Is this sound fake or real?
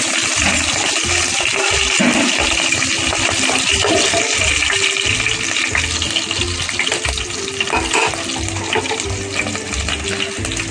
real